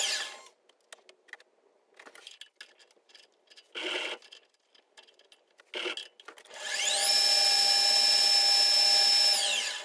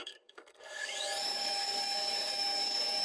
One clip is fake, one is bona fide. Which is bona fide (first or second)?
first